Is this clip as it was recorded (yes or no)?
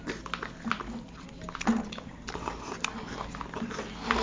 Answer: yes